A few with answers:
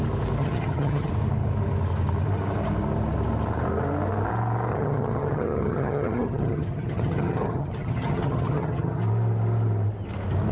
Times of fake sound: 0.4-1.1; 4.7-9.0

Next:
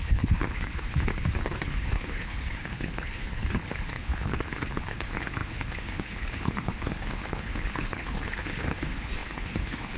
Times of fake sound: 0.0-10.0

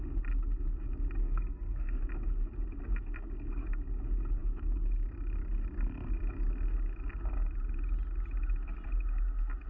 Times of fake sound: 1.2-2.0